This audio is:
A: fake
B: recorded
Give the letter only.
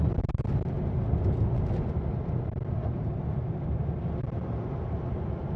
B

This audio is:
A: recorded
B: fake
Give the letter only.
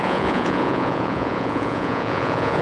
B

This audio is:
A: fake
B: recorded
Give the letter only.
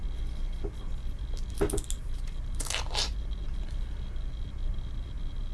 B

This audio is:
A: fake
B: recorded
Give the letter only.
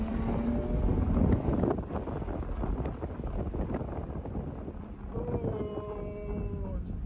B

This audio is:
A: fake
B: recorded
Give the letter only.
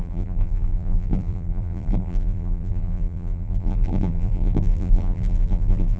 A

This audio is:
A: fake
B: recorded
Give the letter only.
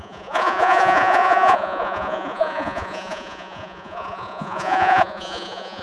A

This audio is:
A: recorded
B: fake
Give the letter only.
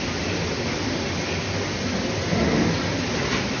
A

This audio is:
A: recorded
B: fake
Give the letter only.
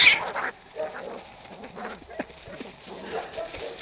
A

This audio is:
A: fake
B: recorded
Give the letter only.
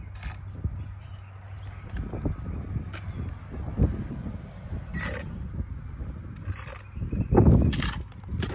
B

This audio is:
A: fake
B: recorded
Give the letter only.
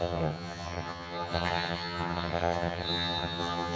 A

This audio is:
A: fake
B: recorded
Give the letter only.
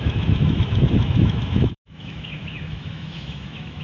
A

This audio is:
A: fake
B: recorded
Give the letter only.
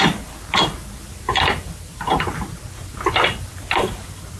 B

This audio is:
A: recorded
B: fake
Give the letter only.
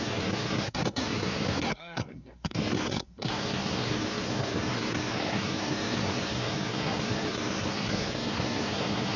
B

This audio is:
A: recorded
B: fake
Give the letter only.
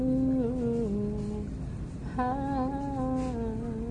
A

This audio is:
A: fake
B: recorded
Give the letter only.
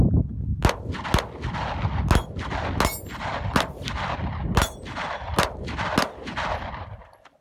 B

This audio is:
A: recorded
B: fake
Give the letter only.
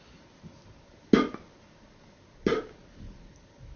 A